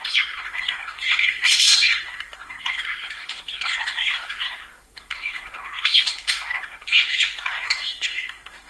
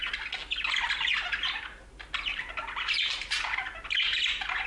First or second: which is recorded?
second